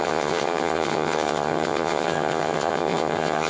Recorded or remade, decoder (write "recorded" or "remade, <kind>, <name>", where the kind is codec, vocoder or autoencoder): remade, vocoder, HiFi-GAN